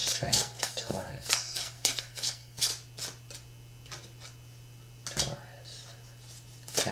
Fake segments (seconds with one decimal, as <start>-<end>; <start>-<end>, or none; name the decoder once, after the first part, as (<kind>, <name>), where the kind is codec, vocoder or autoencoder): 0.0-2.7 (codec, SNAC)